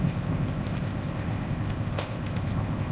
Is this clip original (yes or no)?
no